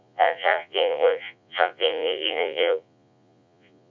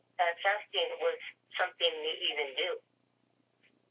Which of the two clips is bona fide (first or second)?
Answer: second